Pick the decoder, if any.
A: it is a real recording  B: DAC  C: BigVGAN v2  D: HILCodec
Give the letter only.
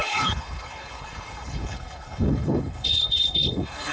D